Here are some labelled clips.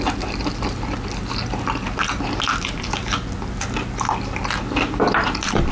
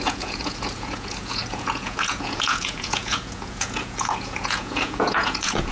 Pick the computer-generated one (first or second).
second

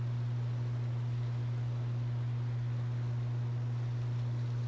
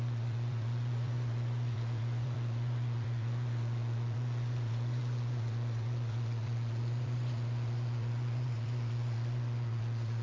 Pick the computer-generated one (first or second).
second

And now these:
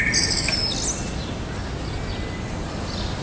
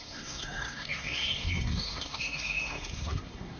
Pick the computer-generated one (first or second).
second